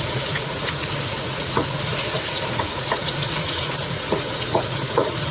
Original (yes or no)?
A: no